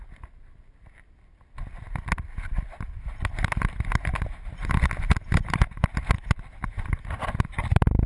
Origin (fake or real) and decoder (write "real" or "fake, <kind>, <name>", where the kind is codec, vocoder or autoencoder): real